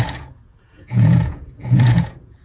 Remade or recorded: remade